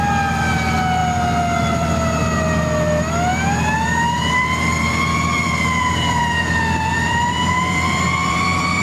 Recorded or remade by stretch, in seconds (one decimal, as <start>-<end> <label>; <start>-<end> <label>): 0.0-1.0 remade; 1.0-4.3 recorded; 4.3-8.8 remade